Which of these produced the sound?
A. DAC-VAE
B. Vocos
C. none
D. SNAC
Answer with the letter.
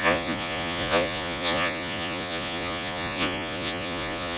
B